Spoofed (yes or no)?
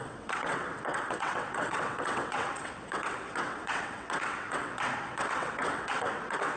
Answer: yes